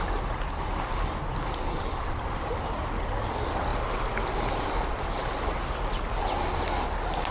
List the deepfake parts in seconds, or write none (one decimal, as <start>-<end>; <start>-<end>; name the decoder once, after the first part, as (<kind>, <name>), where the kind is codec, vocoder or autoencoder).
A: none